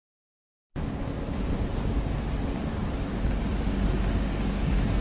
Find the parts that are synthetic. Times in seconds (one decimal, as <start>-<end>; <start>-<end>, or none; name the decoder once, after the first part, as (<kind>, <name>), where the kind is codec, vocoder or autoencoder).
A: none